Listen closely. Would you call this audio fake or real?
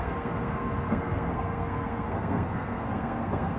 fake